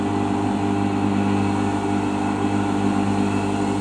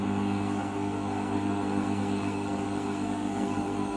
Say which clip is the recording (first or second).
first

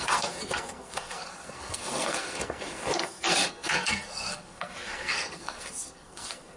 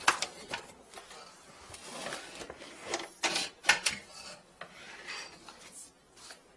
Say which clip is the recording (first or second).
second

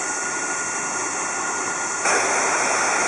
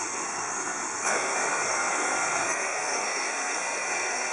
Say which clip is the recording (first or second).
first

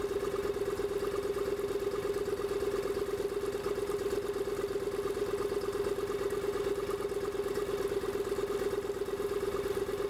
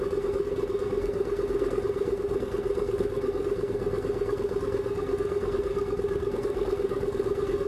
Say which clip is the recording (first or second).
first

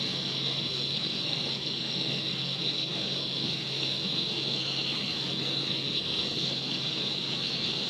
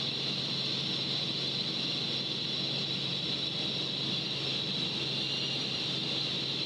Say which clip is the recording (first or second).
second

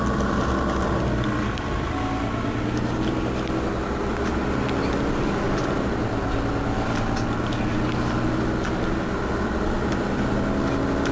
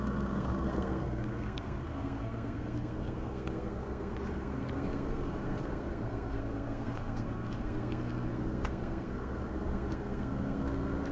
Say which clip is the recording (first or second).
first